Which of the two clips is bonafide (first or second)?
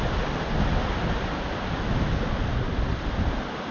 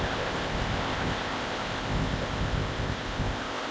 first